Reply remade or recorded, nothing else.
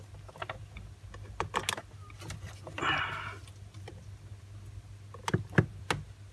recorded